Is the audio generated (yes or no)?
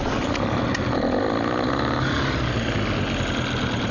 no